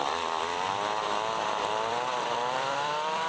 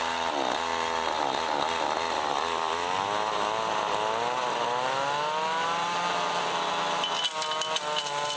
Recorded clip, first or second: second